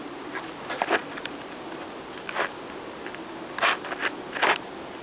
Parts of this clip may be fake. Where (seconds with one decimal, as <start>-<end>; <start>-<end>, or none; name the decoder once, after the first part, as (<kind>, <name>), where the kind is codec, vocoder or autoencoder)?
none